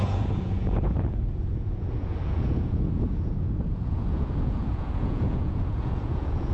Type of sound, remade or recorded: remade